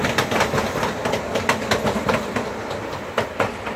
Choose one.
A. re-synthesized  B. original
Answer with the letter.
B